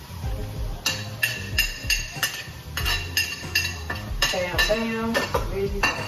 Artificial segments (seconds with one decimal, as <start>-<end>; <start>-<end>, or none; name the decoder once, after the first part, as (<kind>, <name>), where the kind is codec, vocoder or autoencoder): 0.0-0.4 (vocoder, BigVGAN v2); 4.1-6.1